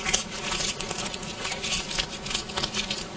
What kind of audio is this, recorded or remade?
remade